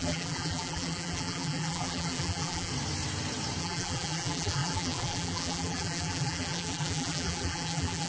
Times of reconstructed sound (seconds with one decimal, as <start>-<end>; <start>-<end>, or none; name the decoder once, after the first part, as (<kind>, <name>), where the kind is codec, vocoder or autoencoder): 0.0-2.7 (vocoder, BigVGAN v2); 3.6-8.1